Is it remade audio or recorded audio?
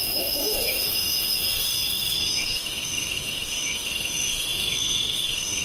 remade